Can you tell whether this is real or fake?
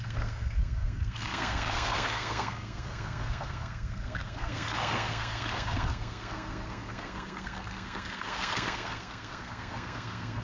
fake